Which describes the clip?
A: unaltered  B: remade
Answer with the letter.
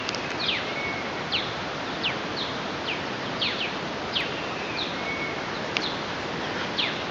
A